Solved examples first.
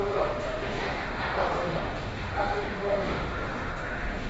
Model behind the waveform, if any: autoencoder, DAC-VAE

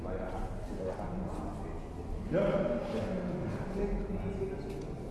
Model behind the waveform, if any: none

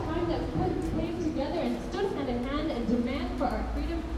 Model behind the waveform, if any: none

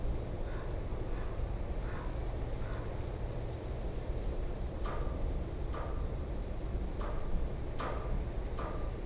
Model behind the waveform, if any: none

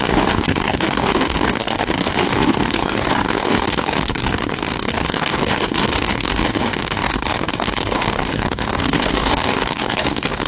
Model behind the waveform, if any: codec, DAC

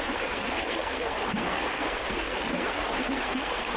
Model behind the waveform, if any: codec, SNAC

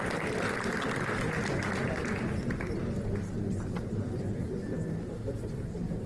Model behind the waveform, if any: none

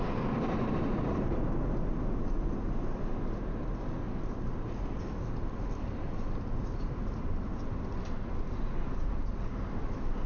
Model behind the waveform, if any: none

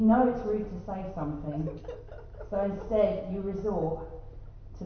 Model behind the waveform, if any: none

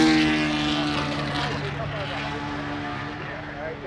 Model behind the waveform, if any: none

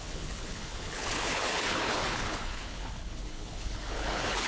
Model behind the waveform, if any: codec, HILCodec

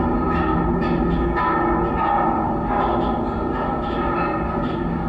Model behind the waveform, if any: none